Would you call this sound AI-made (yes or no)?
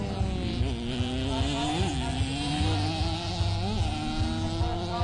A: no